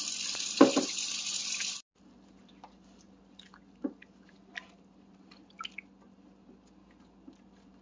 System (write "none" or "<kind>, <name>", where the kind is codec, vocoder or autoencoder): none